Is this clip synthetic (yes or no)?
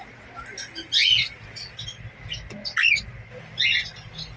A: no